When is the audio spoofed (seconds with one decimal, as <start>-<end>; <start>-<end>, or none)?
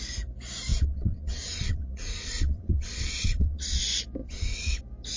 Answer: 0.7-3.8; 4.2-4.8